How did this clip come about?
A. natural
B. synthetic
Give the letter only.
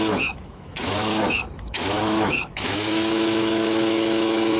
B